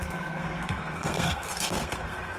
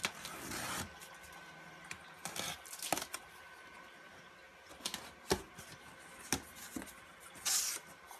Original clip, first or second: second